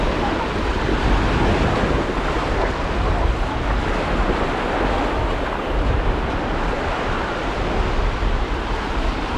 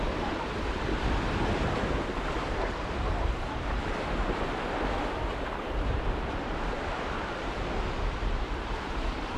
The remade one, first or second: second